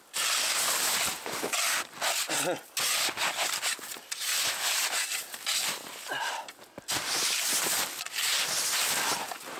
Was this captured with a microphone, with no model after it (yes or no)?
yes